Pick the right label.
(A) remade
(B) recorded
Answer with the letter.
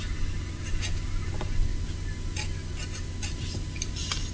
B